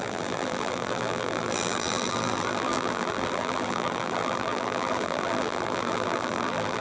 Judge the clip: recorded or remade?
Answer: remade